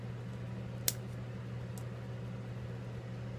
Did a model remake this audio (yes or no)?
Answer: no